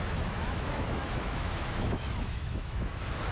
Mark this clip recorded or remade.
remade